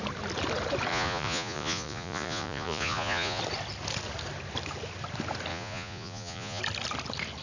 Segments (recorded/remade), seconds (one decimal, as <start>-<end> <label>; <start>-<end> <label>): 0.0-0.9 recorded; 0.9-3.4 remade; 3.4-5.5 recorded; 5.5-6.6 remade; 6.6-7.4 recorded

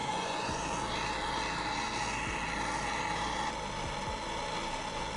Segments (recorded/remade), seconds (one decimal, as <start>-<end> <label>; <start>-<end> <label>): 0.0-0.6 remade; 0.6-5.2 recorded